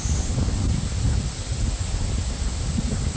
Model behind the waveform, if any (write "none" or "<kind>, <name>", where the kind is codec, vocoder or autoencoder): none